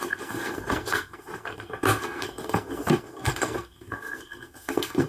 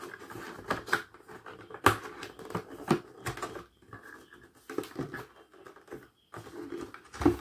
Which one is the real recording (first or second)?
second